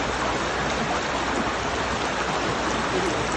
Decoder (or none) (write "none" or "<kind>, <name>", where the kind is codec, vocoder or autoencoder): none